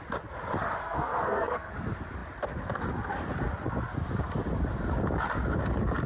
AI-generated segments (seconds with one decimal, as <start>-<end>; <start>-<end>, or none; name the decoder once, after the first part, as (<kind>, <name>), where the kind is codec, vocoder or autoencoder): 0.8-1.7 (codec, SNAC)